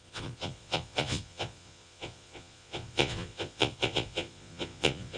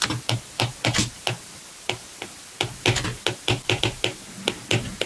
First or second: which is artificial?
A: first